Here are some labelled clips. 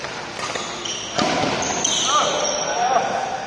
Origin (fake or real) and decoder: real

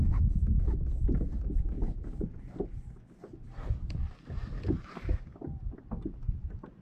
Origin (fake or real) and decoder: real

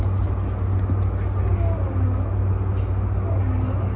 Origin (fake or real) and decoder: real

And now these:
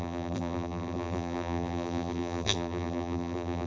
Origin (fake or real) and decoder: fake, vocoder, BigVGAN v2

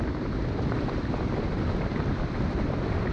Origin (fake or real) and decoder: fake, vocoder, BigVGAN v2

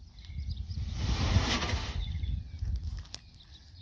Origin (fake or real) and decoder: real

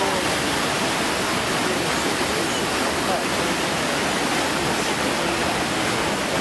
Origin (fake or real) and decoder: real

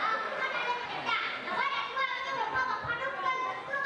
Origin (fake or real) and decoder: real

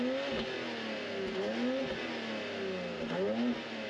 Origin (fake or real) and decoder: real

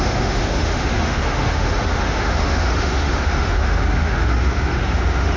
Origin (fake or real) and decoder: fake, autoencoder, DAC-VAE